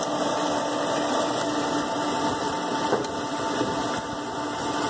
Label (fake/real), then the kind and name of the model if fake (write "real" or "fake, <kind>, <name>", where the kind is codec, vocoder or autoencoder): real